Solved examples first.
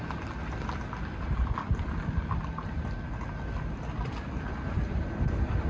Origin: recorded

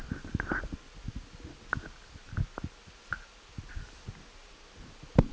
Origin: recorded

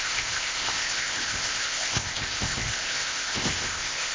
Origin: remade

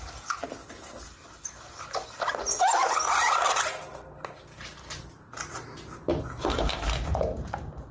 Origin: recorded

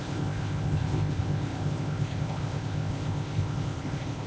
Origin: remade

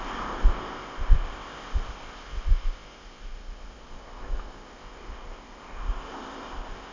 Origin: remade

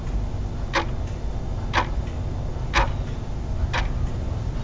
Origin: recorded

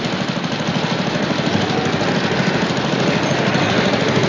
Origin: recorded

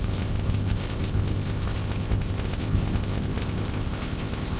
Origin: remade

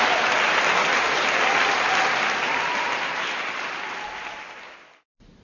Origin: recorded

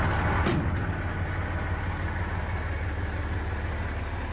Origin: recorded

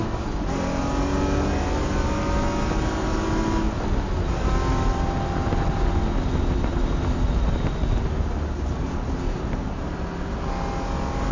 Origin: recorded